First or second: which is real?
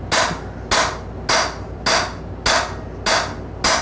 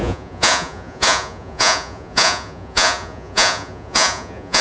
first